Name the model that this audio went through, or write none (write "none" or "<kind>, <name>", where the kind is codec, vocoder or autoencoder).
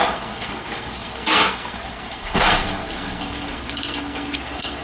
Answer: codec, SNAC